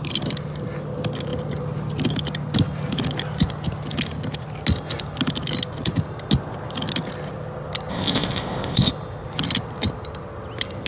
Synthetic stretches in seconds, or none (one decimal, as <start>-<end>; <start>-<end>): 7.9-8.9